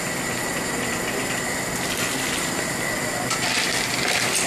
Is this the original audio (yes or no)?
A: yes